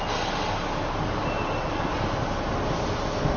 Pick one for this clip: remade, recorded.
recorded